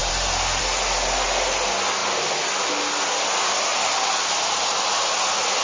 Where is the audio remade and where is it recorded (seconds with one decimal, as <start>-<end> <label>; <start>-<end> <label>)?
0.0-0.6 remade; 0.6-5.6 recorded